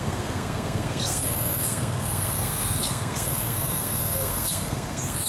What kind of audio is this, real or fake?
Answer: fake